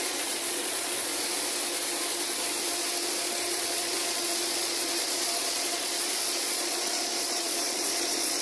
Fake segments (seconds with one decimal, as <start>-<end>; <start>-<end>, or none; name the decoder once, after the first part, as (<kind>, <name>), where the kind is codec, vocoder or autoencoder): 0.0-1.1 (vocoder, Vocos); 3.6-8.4